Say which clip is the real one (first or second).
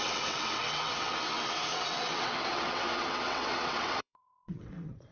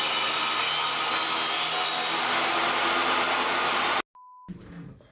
second